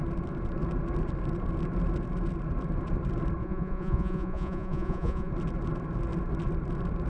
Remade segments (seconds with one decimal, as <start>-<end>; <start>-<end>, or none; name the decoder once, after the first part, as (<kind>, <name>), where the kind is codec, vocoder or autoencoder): 3.4-5.3 (vocoder, Vocos)